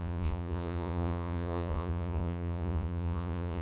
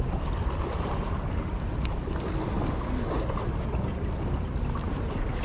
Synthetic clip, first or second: first